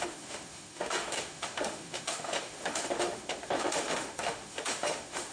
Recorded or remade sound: remade